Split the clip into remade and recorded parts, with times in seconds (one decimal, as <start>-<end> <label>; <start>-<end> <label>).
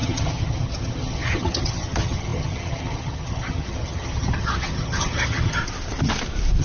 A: 0.0-5.6 remade; 5.6-6.6 recorded